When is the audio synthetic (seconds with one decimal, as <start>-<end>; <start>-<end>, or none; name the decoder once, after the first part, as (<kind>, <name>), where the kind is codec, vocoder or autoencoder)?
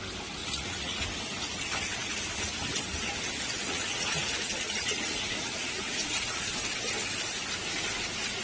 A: 0.4-1.0 (vocoder, Vocos); 3.6-6.5